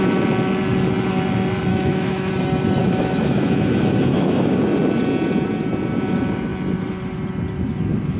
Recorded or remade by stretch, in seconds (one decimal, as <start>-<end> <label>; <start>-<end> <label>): 0.0-1.7 recorded; 1.7-2.3 remade; 2.3-2.8 recorded; 2.8-4.6 remade; 4.6-8.2 recorded